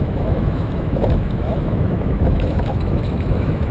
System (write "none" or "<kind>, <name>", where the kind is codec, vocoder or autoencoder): autoencoder, DAC-VAE